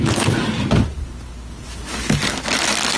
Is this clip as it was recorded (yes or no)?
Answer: yes